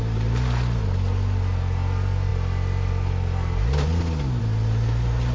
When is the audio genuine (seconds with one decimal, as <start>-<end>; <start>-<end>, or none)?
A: 0.0-5.3